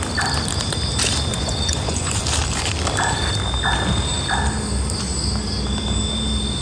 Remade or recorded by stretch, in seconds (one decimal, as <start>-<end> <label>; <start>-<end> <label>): 0.0-1.3 recorded; 1.3-2.2 remade; 2.2-6.6 recorded